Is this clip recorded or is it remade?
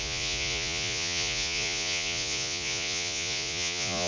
remade